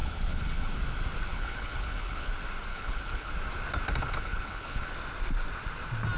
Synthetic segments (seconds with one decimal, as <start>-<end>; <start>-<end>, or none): 0.0-0.7; 1.3-2.3; 2.7-3.3; 4.0-4.9